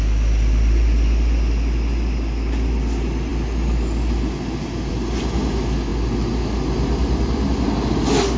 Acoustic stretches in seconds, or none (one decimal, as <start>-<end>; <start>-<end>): 0.0-8.4